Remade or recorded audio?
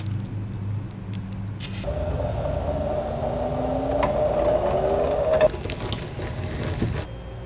recorded